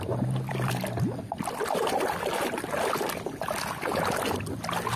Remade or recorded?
recorded